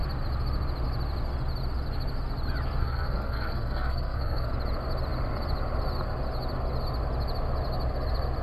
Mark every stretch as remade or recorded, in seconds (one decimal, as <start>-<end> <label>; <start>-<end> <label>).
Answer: 0.0-2.8 recorded; 2.8-4.5 remade; 4.5-8.4 recorded